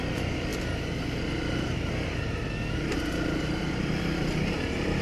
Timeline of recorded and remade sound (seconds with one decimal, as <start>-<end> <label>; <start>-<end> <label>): 0.0-0.5 remade; 0.5-2.7 recorded; 2.7-5.0 remade